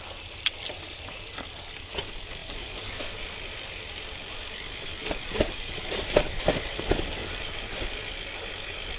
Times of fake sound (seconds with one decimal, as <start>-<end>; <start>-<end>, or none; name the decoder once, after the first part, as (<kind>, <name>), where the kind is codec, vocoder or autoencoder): 2.4-2.9 (vocoder, BigVGAN v2); 5.0-6.5